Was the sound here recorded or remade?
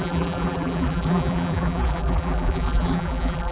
remade